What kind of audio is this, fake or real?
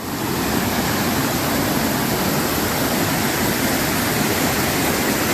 real